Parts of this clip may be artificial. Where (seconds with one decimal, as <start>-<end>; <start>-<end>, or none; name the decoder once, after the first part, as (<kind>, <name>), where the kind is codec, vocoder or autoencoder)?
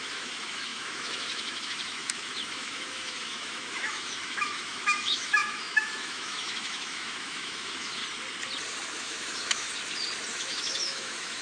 0.0-8.0 (autoencoder, DAC-VAE); 9.0-9.7; 10.3-11.4